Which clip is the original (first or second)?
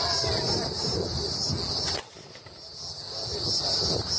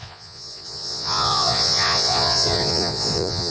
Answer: first